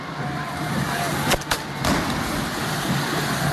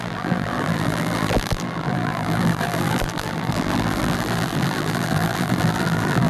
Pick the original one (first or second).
first